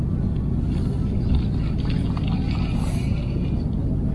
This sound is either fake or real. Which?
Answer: real